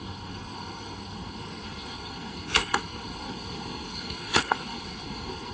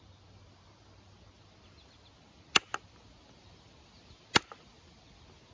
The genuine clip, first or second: second